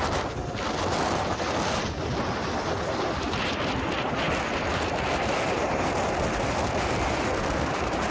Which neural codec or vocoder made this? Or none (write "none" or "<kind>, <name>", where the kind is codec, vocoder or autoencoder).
none